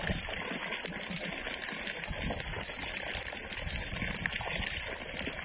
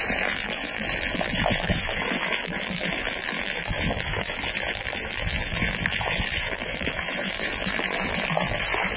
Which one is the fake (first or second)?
second